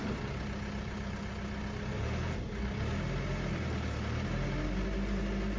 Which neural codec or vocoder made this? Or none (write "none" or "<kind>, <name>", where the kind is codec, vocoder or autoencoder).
none